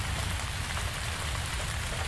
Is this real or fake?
real